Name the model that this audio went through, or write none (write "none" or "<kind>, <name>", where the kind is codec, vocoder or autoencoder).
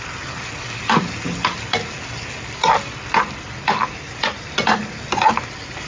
none